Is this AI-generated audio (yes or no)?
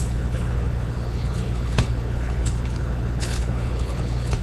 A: yes